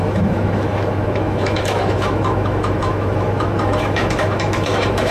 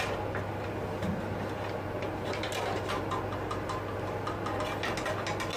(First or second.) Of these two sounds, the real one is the second